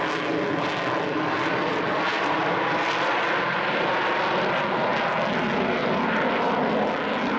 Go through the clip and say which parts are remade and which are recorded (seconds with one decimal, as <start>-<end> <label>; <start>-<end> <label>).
0.0-7.4 recorded